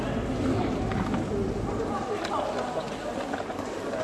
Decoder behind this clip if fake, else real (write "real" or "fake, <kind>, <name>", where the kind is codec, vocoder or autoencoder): real